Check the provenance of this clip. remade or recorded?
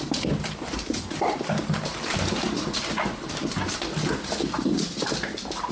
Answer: remade